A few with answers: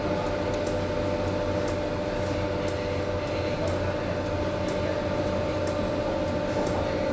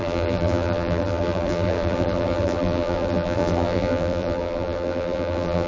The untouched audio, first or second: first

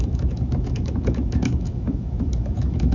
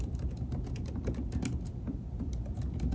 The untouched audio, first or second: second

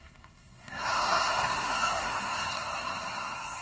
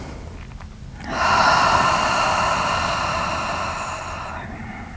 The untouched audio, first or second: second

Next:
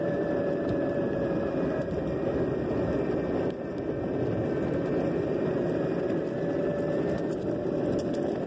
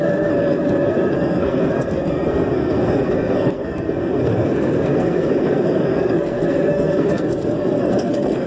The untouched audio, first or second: first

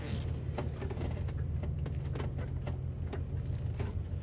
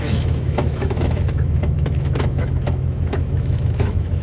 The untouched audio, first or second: first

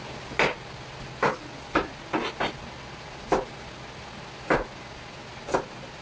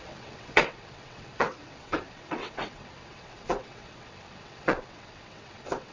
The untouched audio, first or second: first